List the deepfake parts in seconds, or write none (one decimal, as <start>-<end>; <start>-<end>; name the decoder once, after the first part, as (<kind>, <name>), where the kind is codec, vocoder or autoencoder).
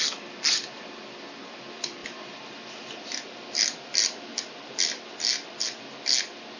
none